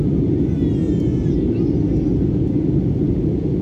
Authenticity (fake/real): real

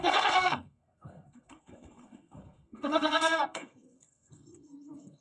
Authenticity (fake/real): fake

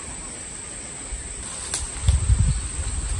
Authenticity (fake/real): real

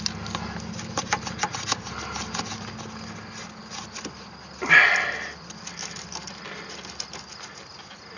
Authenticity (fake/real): real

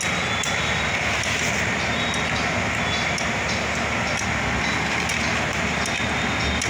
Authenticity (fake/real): real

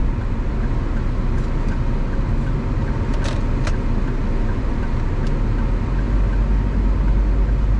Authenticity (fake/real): real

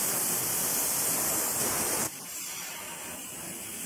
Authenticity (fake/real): real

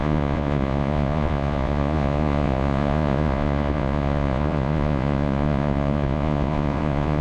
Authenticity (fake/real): fake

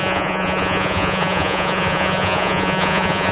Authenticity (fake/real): fake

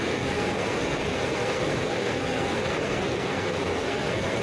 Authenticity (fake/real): fake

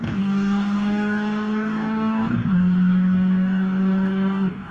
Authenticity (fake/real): fake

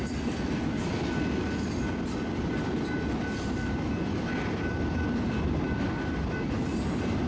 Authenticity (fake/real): real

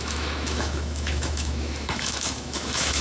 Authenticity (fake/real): fake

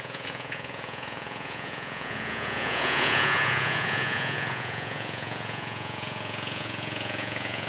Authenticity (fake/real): fake